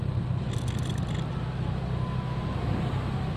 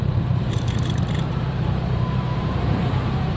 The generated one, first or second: second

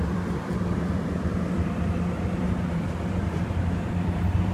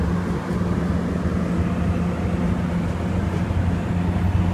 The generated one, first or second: first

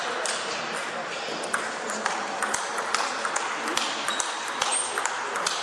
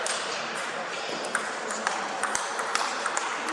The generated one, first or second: second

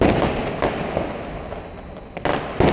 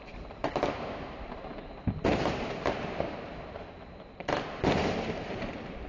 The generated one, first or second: second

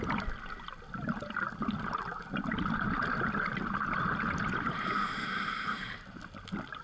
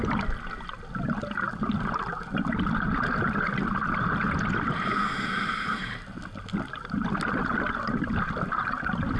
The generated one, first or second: first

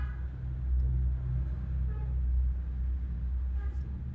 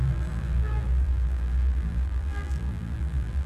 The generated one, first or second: second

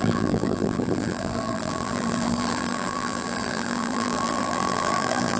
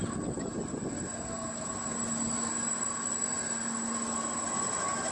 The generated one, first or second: first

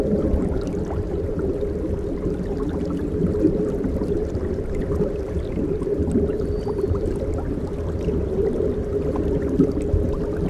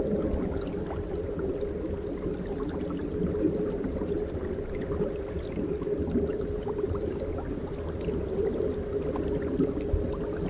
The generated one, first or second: first